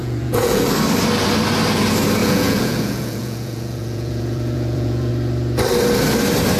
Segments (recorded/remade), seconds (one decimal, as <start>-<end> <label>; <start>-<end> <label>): 0.0-0.6 remade; 0.6-2.2 recorded; 2.2-5.1 remade; 5.1-6.6 recorded